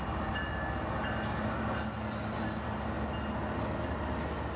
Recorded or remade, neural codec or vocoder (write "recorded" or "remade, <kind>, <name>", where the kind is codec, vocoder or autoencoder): recorded